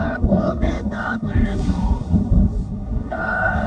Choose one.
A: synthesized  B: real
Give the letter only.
A